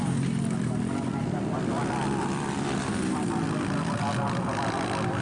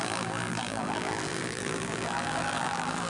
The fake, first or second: second